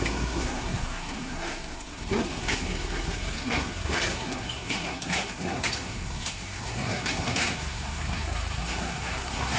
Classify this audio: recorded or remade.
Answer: remade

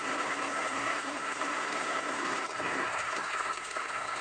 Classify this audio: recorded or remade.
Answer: remade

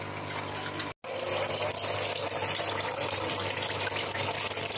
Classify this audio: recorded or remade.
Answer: recorded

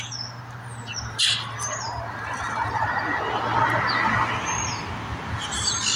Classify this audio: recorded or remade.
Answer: recorded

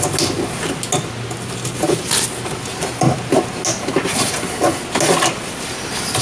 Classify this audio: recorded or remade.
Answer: recorded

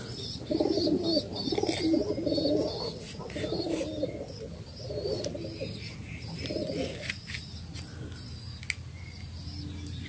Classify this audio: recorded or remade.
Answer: recorded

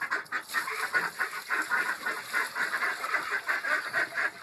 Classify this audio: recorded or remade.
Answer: recorded